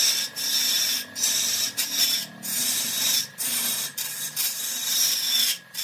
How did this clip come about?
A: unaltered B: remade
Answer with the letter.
B